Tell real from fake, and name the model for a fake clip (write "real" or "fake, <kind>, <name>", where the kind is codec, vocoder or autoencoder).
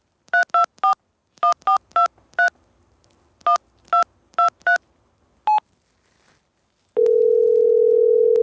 real